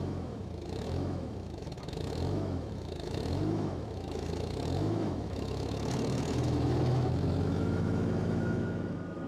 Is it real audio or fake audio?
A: fake